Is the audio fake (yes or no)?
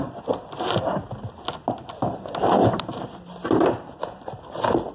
no